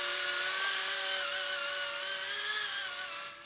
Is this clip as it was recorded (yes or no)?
yes